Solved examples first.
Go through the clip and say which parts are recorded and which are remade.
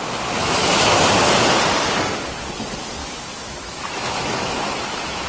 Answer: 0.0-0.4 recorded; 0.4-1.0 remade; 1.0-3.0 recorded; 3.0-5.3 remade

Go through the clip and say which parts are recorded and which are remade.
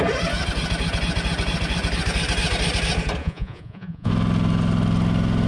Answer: 0.0-3.2 recorded; 3.2-4.1 remade; 4.1-5.5 recorded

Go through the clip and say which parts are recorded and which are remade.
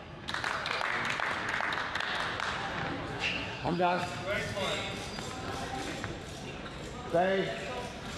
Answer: 0.0-3.1 recorded; 3.1-4.0 remade; 4.0-8.2 recorded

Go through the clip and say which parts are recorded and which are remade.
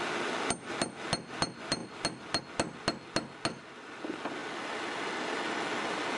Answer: 0.0-6.2 recorded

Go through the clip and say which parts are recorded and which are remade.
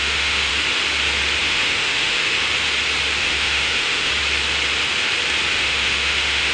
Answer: 0.0-0.5 remade; 0.5-1.4 recorded; 1.4-2.4 remade; 2.4-3.2 recorded; 3.2-4.1 remade; 4.1-5.5 recorded; 5.5-6.5 remade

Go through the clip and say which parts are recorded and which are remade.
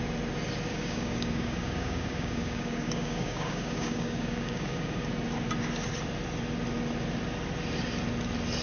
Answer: 0.0-0.7 recorded; 0.7-5.1 remade; 5.1-8.6 recorded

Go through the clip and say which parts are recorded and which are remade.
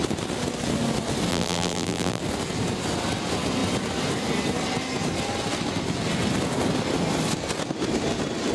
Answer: 0.0-1.3 recorded; 1.3-2.2 remade; 2.2-8.5 recorded